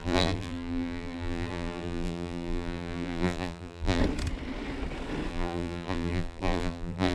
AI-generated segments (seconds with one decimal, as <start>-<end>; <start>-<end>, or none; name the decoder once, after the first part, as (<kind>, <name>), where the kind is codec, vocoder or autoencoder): 0.0-4.0 (vocoder, BigVGAN v2); 5.3-7.1